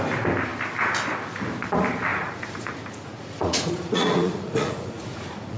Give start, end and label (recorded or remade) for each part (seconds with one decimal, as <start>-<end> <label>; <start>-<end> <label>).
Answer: 0.0-2.1 recorded; 2.1-5.6 remade